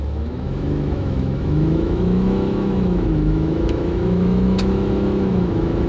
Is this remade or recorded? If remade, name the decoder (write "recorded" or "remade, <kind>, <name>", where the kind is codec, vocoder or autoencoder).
remade, autoencoder, DAC-VAE